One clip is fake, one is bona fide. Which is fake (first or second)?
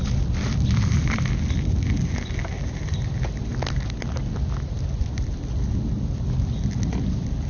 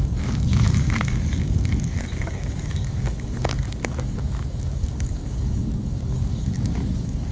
second